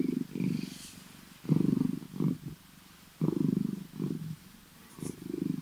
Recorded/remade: recorded